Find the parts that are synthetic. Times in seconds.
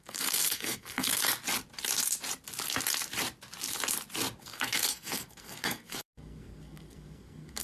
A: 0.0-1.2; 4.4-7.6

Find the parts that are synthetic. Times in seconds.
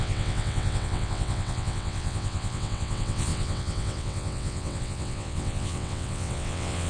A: 0.0-6.9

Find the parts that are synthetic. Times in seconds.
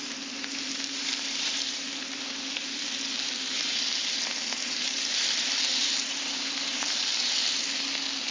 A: 0.0-7.1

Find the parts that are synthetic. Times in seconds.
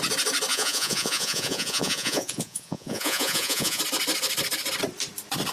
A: 0.5-3.8